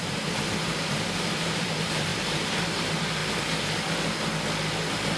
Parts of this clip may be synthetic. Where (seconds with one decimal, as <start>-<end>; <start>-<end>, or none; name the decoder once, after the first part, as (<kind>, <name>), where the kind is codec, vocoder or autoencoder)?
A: 0.0-3.2 (vocoder, BigVGAN v2)